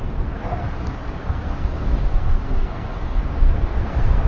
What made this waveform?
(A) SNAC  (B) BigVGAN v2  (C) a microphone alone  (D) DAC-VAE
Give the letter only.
A